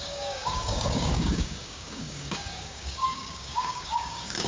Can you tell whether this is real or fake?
fake